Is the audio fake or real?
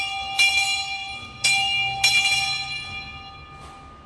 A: real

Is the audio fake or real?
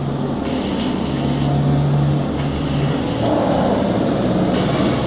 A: real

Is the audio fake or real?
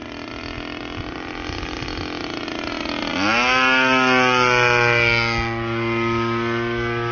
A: real